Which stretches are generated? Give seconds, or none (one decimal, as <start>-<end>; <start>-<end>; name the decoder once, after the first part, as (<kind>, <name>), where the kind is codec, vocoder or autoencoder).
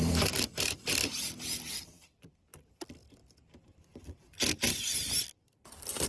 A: 0.0-2.5 (vocoder, BigVGAN v2); 3.2-6.1